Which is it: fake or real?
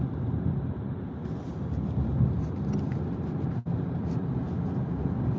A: real